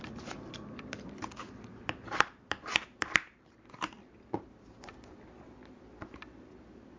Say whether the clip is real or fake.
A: real